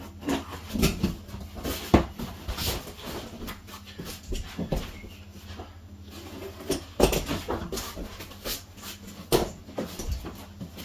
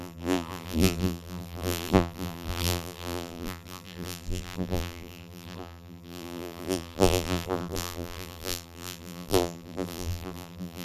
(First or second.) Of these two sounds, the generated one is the second